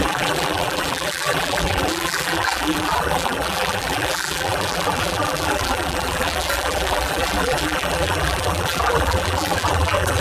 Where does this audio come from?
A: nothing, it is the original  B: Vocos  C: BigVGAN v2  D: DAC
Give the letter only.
C